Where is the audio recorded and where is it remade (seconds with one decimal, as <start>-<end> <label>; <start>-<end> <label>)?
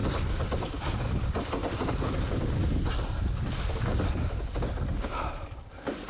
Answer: 0.0-6.1 recorded